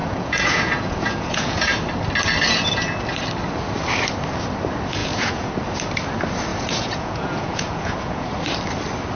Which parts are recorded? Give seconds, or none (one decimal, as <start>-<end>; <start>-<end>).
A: 1.8-5.0; 5.5-6.5; 8.3-9.1